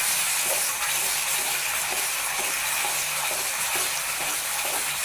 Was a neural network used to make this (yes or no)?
yes